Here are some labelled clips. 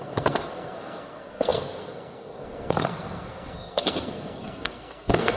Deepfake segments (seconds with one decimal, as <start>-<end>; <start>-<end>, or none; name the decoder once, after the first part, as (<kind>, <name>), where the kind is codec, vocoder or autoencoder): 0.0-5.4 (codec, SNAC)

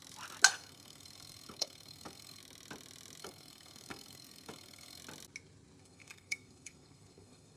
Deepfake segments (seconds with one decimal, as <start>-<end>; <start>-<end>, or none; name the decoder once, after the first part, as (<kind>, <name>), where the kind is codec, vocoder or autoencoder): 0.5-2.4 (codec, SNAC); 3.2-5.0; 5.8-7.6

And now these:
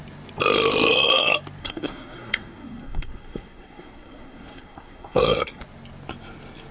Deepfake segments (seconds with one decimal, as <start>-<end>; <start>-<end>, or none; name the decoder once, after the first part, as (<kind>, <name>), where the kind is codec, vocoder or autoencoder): 1.6-5.6 (codec, SNAC)